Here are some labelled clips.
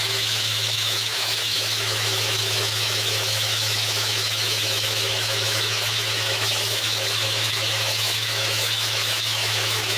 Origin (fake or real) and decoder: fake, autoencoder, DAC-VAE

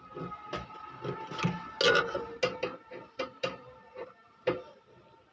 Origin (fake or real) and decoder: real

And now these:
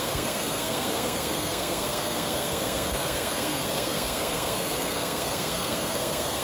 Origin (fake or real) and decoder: fake, codec, SNAC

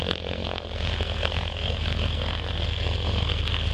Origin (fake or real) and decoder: fake, codec, SNAC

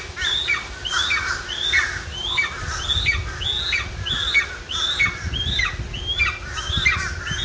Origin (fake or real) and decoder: real